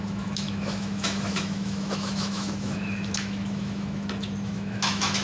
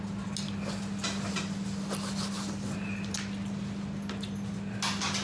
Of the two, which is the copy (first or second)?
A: first